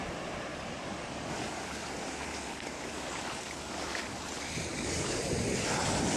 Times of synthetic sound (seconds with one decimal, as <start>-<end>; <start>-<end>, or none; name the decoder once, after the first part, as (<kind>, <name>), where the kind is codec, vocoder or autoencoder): 0.5-4.2 (codec, DAC); 4.7-5.2